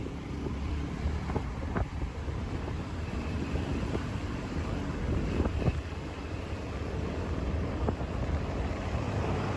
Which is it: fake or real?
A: fake